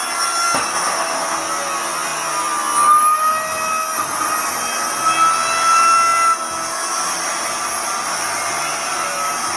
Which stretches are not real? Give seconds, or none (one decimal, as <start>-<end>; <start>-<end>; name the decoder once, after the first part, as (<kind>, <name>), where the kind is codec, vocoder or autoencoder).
none

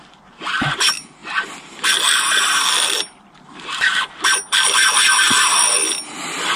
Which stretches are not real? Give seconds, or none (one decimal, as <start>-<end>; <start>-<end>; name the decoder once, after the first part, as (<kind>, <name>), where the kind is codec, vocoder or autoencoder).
none

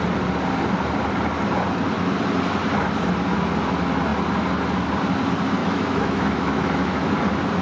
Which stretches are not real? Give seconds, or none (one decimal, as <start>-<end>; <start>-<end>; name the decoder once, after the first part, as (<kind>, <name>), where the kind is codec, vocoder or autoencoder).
5.6-7.1 (autoencoder, DAC-VAE)